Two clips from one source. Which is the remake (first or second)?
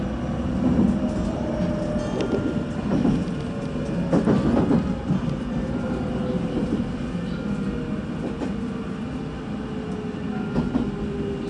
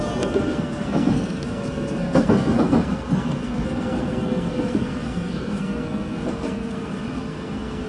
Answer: second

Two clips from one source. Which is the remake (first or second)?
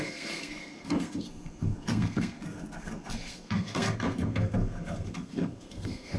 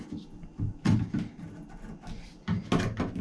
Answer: first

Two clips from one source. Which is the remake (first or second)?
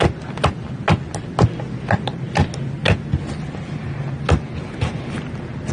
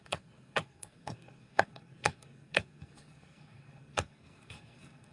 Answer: second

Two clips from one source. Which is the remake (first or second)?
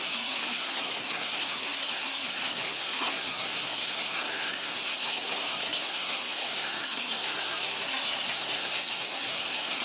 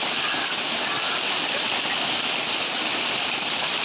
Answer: first